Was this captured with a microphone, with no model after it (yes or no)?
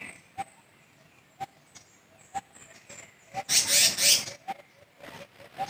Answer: yes